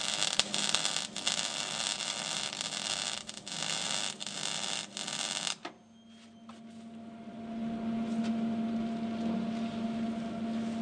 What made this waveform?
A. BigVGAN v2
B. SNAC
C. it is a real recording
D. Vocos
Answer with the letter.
C